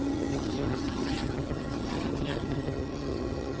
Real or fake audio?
fake